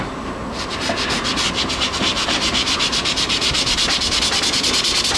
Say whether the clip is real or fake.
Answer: real